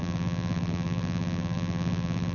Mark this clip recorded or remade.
remade